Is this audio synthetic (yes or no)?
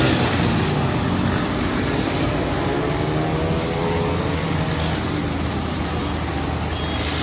no